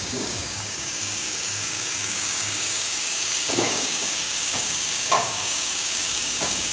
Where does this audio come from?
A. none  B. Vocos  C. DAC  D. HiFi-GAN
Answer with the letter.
C